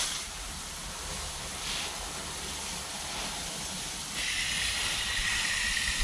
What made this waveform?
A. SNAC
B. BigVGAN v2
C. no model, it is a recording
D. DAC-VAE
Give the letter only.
B